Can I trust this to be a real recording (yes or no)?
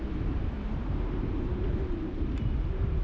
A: no